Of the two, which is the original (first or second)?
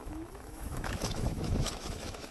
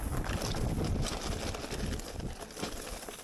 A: second